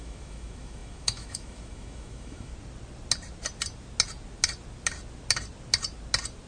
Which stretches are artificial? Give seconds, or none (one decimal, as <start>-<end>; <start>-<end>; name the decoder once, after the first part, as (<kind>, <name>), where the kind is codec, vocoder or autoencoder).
0.0-2.5 (autoencoder, DAC-VAE)